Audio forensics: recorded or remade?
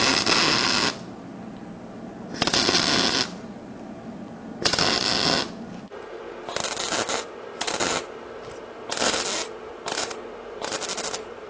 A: recorded